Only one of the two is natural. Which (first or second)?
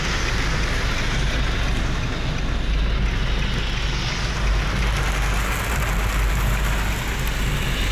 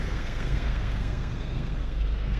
first